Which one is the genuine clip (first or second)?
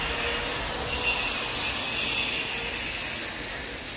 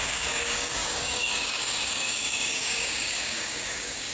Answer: first